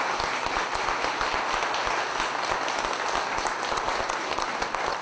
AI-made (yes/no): no